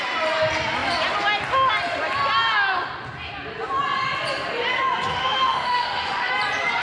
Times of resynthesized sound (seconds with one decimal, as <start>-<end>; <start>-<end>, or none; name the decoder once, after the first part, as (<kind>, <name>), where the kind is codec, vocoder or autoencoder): 5.1-6.3 (autoencoder, DAC-VAE)